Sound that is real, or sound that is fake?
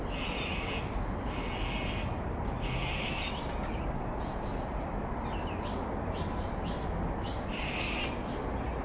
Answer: real